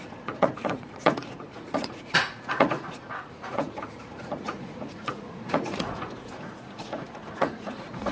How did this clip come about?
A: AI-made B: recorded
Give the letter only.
A